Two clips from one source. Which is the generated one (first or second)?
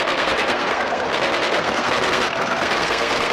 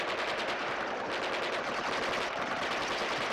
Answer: first